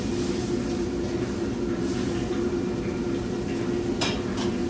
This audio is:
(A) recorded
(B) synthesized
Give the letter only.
A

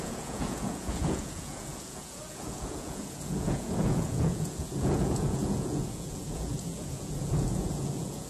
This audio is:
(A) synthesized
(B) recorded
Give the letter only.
A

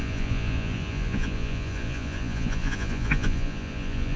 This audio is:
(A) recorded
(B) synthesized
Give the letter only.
B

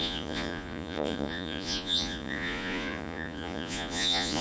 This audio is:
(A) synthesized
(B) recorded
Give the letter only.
A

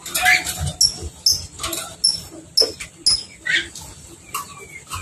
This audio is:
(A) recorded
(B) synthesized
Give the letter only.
A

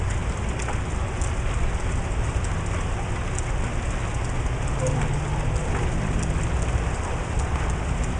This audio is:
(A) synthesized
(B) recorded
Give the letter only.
B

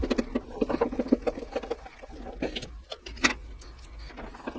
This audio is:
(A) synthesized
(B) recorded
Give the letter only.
B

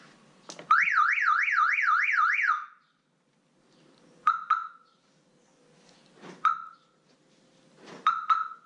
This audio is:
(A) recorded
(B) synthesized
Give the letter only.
A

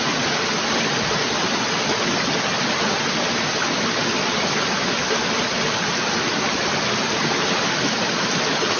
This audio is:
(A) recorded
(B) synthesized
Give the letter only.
A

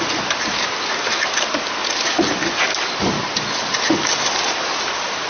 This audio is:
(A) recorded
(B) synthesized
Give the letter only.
A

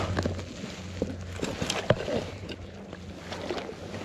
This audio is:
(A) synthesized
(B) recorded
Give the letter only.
B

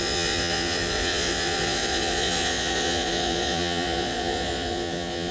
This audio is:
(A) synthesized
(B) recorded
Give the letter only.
A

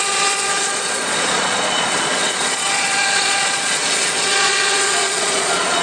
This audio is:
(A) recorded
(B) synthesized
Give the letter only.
B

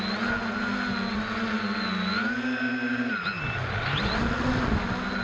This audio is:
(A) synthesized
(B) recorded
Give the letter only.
B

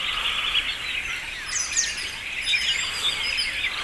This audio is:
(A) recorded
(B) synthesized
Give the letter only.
A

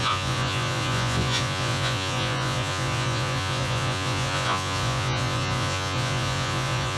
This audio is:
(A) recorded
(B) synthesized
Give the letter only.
B